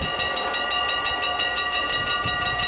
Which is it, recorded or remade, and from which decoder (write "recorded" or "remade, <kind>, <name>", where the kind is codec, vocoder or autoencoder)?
recorded